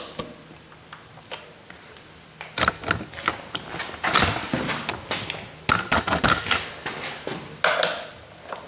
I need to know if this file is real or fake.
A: real